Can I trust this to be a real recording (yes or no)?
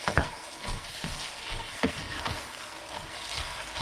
no